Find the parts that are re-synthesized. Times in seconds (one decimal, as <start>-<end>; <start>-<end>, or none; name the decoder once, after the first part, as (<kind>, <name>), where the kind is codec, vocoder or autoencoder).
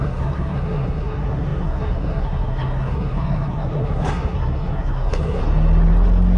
0.0-5.4 (codec, SNAC)